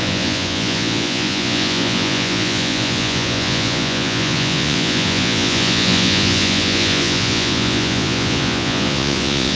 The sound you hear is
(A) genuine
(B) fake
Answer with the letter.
B